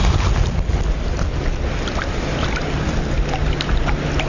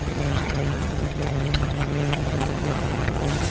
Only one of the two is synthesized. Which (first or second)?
second